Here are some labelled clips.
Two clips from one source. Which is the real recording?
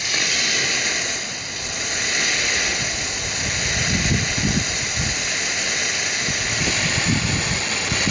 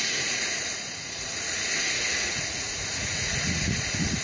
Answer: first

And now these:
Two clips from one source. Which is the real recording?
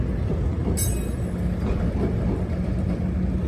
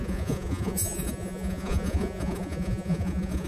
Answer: first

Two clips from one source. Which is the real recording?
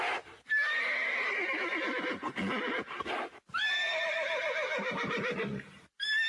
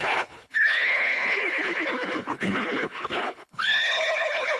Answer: first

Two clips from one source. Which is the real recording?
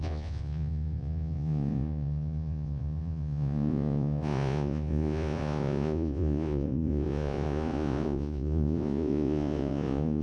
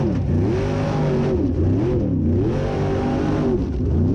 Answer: second